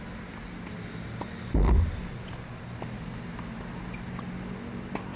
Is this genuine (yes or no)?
yes